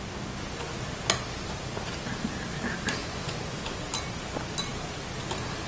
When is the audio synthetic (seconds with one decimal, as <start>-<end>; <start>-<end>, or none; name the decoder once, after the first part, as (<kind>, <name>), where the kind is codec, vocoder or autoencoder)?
3.0-3.8 (vocoder, Vocos)